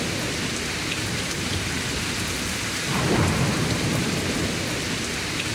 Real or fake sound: fake